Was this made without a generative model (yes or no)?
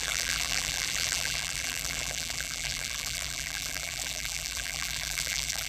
no